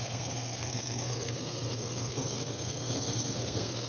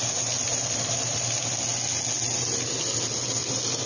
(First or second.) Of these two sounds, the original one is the second